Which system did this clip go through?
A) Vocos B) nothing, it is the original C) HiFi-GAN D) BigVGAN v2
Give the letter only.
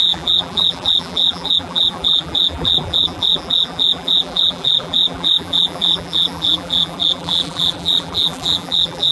D